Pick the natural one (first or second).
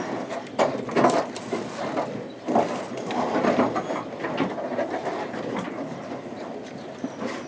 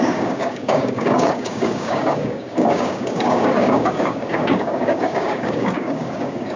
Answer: first